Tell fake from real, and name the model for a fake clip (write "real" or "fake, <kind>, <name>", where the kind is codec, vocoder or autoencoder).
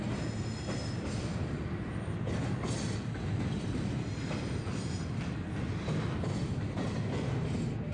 real